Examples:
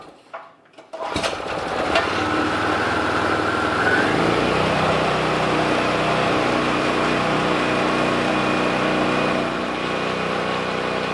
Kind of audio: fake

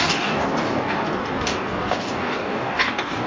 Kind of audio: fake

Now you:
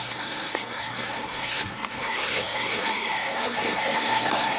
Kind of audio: fake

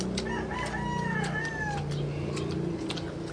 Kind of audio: real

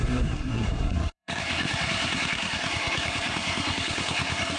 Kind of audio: fake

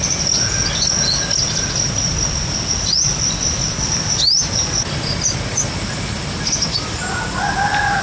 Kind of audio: real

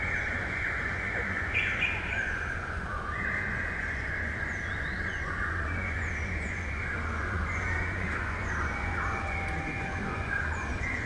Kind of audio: fake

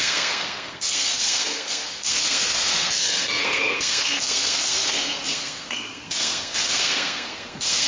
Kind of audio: fake